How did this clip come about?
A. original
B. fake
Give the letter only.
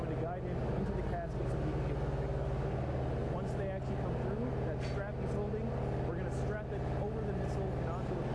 A